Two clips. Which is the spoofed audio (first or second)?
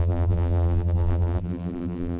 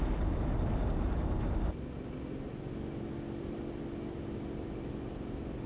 first